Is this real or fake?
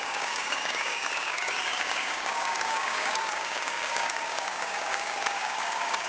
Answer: fake